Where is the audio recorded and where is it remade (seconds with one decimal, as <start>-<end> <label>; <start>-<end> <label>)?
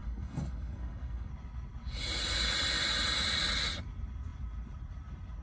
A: 0.0-1.3 remade; 1.3-5.4 recorded